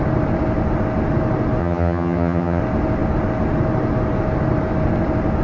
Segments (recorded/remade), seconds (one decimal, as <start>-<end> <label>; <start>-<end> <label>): 0.0-1.6 recorded; 1.6-2.6 remade; 2.6-5.4 recorded